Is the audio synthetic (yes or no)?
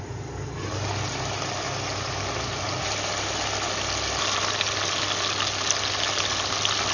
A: no